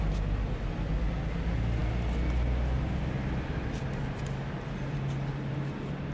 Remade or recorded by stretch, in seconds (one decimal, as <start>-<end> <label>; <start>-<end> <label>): 0.0-6.1 recorded